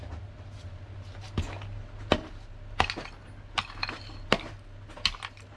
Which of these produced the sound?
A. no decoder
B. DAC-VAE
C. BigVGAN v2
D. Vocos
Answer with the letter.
A